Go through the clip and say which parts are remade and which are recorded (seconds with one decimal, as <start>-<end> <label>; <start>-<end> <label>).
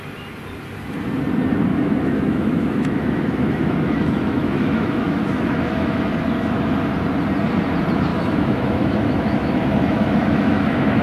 0.0-1.7 recorded; 1.7-6.0 remade; 6.0-8.1 recorded; 8.1-11.0 remade